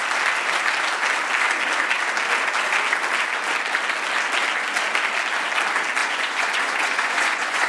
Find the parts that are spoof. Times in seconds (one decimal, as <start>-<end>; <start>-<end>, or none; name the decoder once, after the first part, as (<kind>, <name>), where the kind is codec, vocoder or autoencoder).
6.0-7.7 (vocoder, Vocos)